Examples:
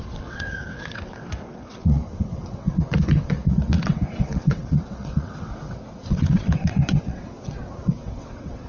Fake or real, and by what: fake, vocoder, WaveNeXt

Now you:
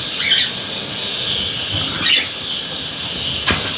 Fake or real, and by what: real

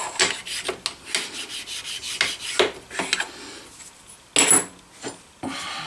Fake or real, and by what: real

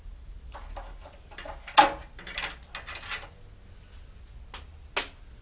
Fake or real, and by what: real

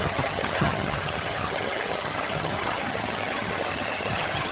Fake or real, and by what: fake, vocoder, HiFi-GAN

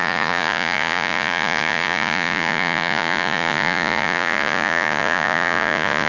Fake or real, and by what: fake, vocoder, Vocos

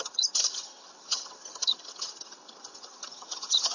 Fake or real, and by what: fake, vocoder, HiFi-GAN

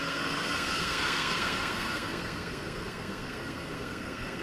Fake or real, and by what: fake, codec, SNAC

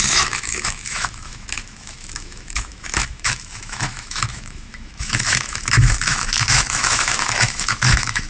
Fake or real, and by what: fake, autoencoder, DAC-VAE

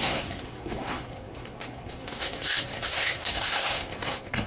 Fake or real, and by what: fake, codec, SNAC